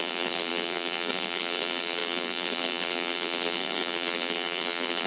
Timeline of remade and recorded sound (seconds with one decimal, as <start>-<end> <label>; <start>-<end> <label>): 0.0-5.1 remade